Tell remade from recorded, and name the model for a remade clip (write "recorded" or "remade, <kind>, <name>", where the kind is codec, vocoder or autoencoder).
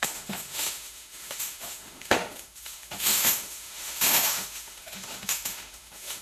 remade, autoencoder, DAC-VAE